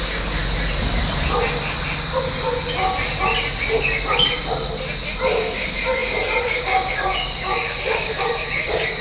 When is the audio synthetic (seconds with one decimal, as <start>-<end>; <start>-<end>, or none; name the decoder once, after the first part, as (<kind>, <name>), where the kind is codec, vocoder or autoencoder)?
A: 0.0-0.4 (codec, DAC); 5.3-9.0